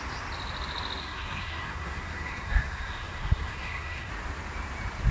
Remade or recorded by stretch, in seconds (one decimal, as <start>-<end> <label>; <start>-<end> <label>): 0.0-1.0 recorded; 1.0-4.1 remade; 4.1-5.1 recorded